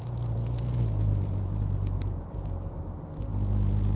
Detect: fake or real real